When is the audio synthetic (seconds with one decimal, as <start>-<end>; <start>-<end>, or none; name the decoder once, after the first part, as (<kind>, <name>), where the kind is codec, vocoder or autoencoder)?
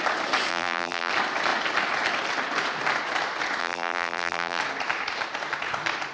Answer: 0.5-1.1 (vocoder, BigVGAN v2); 3.6-4.6